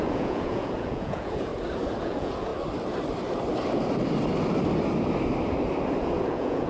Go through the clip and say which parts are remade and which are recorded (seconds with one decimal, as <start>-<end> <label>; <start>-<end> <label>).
0.0-1.5 remade; 1.5-2.0 recorded; 2.0-2.5 remade; 2.5-6.2 recorded; 6.2-6.7 remade